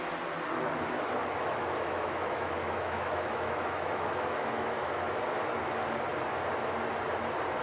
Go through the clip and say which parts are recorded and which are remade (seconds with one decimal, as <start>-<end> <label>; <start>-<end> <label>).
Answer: 0.0-1.2 recorded; 1.2-5.2 remade; 5.2-7.6 recorded